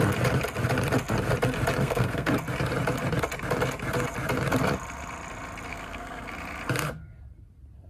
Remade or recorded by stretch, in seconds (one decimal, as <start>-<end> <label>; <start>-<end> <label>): 0.0-1.8 recorded; 1.8-2.3 remade; 2.3-5.7 recorded; 5.7-6.3 remade; 6.3-7.9 recorded